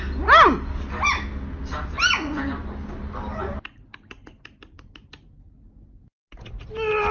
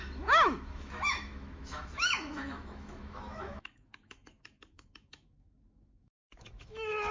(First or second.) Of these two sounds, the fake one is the second